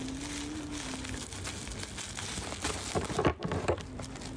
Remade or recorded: recorded